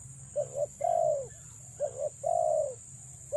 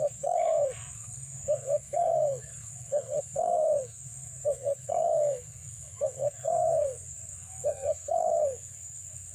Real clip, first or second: first